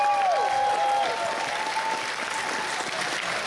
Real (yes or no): yes